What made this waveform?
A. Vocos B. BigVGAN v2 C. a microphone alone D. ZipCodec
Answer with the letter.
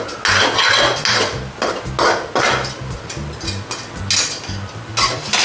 C